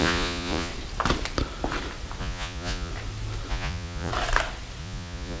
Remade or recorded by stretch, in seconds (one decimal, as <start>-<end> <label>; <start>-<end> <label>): 0.0-0.7 remade; 0.7-2.2 recorded; 2.2-2.9 remade; 2.9-3.5 recorded; 3.5-4.1 remade; 4.1-4.8 recorded; 4.8-5.4 remade